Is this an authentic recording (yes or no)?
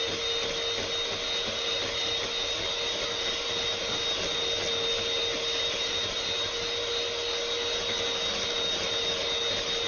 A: yes